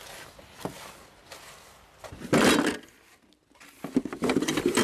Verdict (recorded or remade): recorded